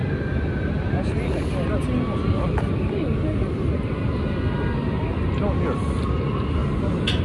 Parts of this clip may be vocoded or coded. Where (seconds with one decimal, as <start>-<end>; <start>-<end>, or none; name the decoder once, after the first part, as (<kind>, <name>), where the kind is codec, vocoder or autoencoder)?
none